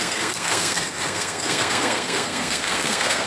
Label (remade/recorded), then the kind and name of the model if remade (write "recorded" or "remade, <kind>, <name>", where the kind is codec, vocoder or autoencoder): remade, codec, SNAC